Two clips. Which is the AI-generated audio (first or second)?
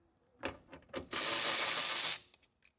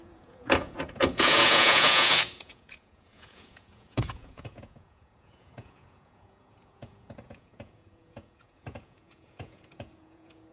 second